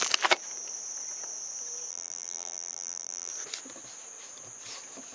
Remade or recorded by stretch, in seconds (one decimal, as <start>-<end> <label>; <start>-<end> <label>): 0.0-1.9 recorded; 1.9-3.3 remade; 3.3-5.1 recorded